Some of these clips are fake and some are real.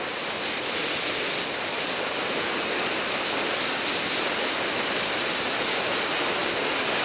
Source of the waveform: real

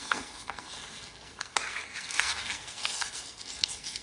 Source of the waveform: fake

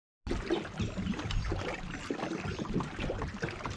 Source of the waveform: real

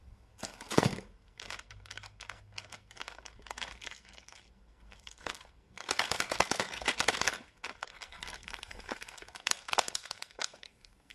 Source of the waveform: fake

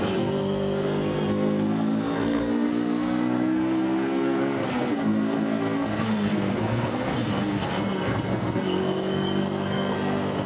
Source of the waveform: fake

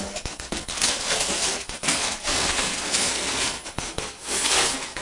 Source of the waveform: fake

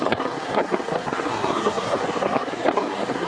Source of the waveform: fake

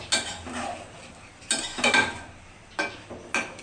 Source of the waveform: real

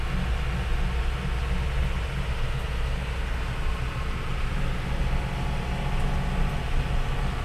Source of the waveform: real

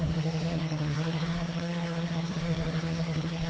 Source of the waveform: fake